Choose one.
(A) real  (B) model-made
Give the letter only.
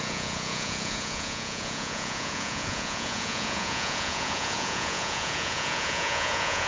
B